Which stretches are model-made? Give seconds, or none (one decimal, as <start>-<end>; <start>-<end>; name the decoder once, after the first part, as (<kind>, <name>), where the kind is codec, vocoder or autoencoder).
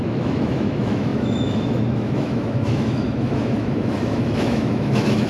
0.0-5.3 (autoencoder, DAC-VAE)